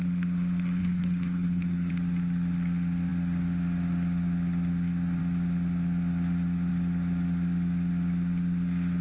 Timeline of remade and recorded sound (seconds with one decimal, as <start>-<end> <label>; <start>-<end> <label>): 0.0-0.8 recorded; 0.8-1.9 remade; 1.9-9.0 recorded